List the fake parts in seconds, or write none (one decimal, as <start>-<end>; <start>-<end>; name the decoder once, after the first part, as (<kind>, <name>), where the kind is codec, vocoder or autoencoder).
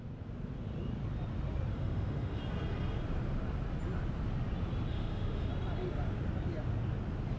1.7-2.4 (autoencoder, DAC-VAE); 4.9-5.5